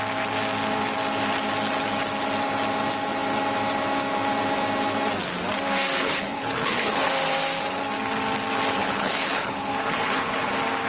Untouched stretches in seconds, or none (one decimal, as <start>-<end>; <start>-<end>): 0.0-6.0; 7.1-8.8; 10.5-10.9